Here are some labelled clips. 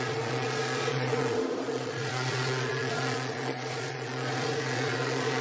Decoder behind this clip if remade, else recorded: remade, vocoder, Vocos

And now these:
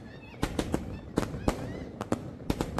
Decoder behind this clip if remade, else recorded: recorded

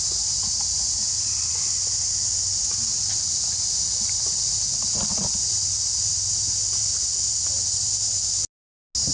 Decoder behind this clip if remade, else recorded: recorded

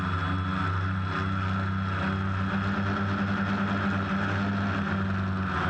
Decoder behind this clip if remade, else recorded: recorded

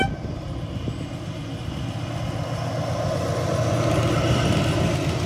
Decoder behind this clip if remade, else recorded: recorded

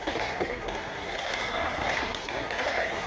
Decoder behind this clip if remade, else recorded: remade, codec, SNAC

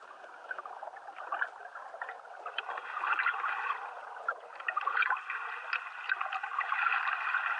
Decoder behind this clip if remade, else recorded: recorded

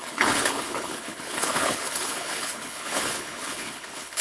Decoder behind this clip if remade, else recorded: remade, codec, HILCodec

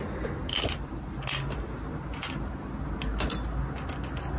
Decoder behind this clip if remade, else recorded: recorded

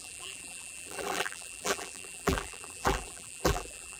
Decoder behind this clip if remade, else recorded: remade, vocoder, BigVGAN v2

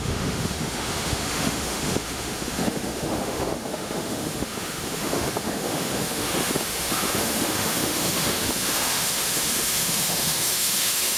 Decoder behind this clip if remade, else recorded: remade, autoencoder, DAC-VAE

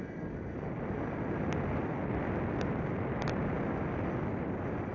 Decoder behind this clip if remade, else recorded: recorded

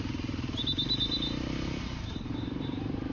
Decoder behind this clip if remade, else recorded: remade, vocoder, BigVGAN v2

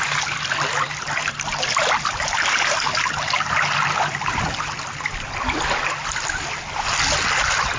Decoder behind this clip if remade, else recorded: recorded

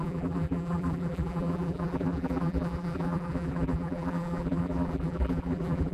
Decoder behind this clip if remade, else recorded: remade, vocoder, BigVGAN v2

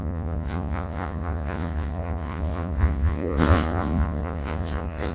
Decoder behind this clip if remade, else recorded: remade, vocoder, Vocos